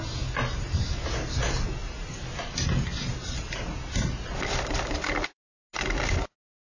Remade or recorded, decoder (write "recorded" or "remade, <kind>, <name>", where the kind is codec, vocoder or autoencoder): recorded